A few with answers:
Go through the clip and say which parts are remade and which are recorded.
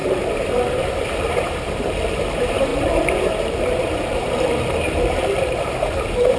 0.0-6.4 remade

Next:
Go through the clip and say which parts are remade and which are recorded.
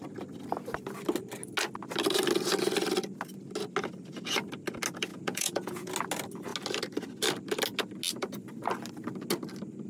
0.0-5.1 recorded; 5.1-5.9 remade; 5.9-9.9 recorded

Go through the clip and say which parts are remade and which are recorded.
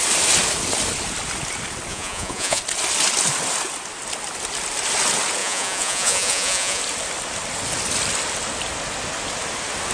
0.0-1.9 recorded; 1.9-2.6 remade; 2.6-5.4 recorded; 5.4-6.8 remade; 6.8-9.9 recorded